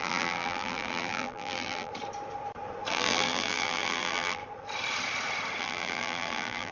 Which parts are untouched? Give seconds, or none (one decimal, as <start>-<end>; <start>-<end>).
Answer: 1.9-2.9; 4.4-5.6